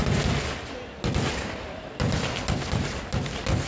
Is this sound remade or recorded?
recorded